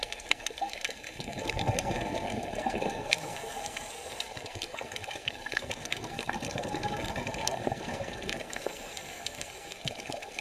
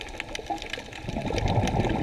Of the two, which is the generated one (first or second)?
first